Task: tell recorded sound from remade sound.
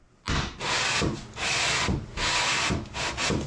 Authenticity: recorded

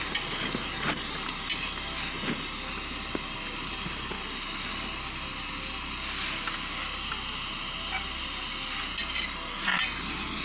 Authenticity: recorded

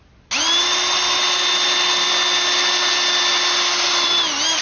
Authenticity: recorded